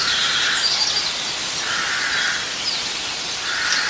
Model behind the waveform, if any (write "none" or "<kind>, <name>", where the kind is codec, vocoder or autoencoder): none